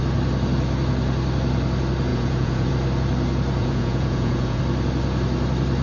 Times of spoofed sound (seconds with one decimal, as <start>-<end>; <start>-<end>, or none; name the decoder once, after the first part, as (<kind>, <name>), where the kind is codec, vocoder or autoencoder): 2.1-2.7 (vocoder, Vocos); 3.6-4.6